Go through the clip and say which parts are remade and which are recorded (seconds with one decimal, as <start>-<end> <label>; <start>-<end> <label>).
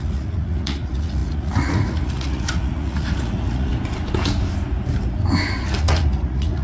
0.0-3.7 remade; 3.7-5.8 recorded; 5.8-6.6 remade